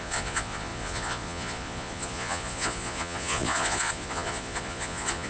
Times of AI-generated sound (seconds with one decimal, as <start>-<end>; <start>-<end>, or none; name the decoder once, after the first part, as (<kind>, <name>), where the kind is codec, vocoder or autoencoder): 0.0-5.3 (vocoder, Vocos)